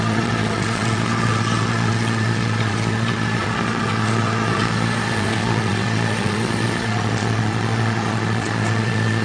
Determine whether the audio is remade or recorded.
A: remade